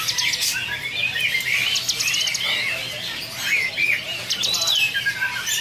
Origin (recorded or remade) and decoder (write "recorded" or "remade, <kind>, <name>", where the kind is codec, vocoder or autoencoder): recorded